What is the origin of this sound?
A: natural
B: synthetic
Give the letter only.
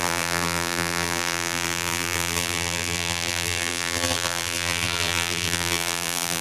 B